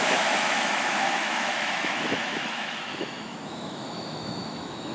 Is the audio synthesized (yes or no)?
yes